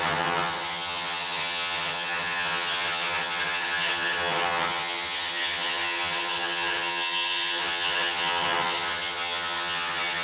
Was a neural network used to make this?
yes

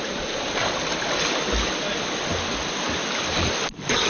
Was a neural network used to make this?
no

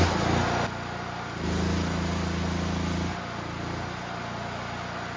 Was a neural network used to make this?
no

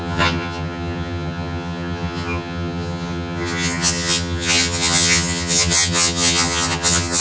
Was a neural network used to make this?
yes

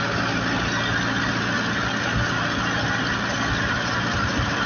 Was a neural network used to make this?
no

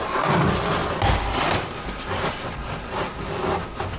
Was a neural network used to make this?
no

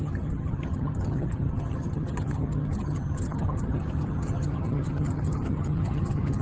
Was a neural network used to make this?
yes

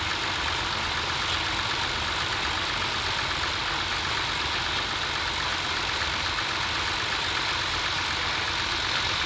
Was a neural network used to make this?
no